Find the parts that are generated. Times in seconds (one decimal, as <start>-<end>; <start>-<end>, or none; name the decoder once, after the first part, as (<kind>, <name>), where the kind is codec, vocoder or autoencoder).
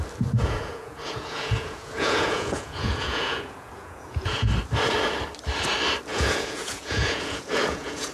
0.4-4.5 (vocoder, Vocos); 6.1-8.1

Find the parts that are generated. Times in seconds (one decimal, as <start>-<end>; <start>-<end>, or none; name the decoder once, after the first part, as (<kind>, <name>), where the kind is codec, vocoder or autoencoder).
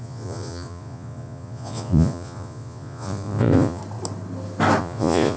0.0-3.8 (vocoder, Vocos); 4.8-5.4